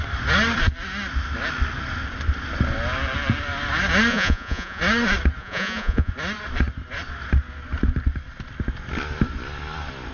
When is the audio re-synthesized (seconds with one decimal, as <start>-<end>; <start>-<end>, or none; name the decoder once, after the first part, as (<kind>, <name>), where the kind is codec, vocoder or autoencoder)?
4.1-4.8 (vocoder, Vocos); 5.4-6.1